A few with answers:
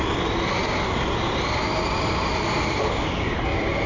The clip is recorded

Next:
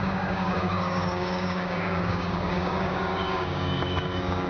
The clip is remade